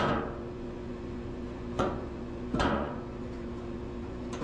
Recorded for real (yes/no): no